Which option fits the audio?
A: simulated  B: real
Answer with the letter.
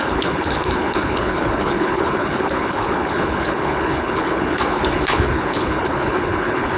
A